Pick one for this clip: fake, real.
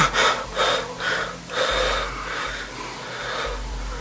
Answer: real